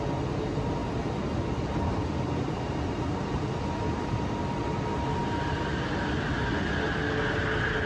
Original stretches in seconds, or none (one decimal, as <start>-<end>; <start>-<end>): 0.0-7.9